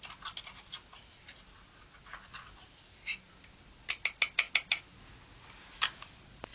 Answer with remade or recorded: recorded